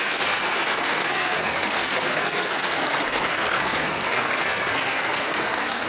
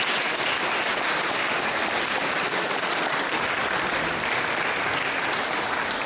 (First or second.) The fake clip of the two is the first